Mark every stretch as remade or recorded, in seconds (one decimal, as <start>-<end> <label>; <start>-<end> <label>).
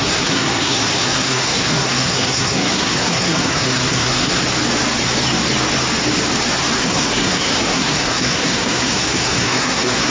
0.0-4.4 remade; 4.4-6.8 recorded; 6.8-10.1 remade